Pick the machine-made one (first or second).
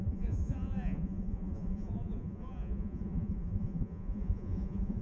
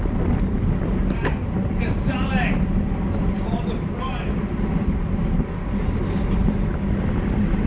first